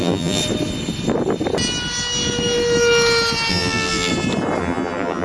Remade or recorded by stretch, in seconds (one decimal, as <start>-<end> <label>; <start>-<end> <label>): 0.0-0.4 remade; 0.4-3.5 recorded; 3.5-4.1 remade; 4.1-4.6 recorded; 4.6-5.2 remade